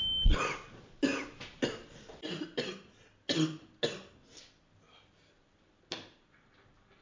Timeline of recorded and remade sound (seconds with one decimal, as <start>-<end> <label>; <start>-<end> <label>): 0.0-7.0 recorded